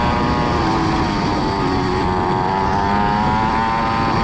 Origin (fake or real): real